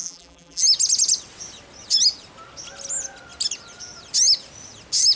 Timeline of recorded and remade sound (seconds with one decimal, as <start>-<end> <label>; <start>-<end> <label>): 0.0-0.6 remade; 0.6-5.2 recorded